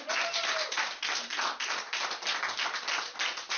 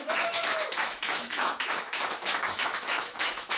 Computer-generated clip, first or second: second